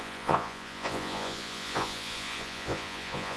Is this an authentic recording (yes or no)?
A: no